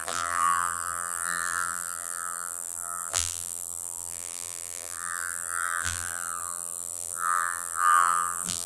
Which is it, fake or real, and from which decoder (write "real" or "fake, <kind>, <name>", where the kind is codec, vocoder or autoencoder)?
fake, vocoder, BigVGAN v2